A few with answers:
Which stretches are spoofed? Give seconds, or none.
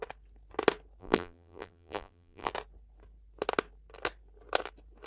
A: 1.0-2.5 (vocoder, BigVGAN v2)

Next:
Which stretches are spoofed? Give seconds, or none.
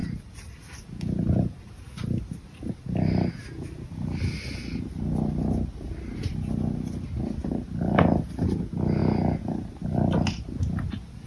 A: 0.0-0.6 (vocoder, BigVGAN v2)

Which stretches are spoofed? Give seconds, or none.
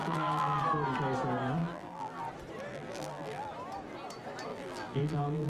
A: 0.0-0.6 (vocoder, BigVGAN v2); 1.6-2.2; 2.7-3.5; 4.5-5.5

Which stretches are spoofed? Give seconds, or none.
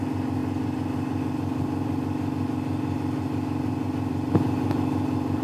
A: none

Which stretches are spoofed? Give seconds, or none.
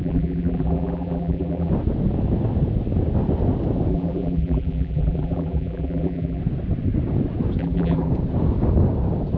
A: 0.0-1.7 (vocoder, BigVGAN v2); 3.9-6.4; 7.6-8.1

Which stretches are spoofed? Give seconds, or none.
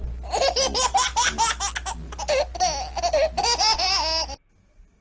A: none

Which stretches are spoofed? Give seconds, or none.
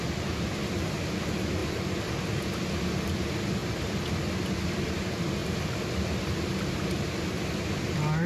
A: 1.6-2.2 (vocoder, BigVGAN v2); 3.6-4.4; 5.4-6.4